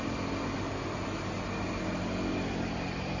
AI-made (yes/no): no